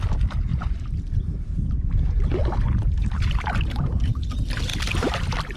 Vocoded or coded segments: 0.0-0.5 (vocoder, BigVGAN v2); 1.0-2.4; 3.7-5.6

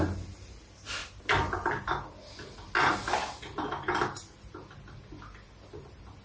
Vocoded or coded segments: none

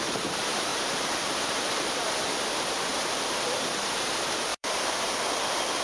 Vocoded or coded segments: 0.7-2.0 (vocoder, BigVGAN v2); 4.5-5.1